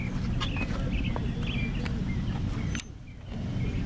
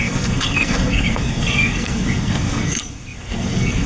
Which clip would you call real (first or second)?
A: first